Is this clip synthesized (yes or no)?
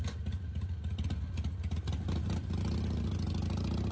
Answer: no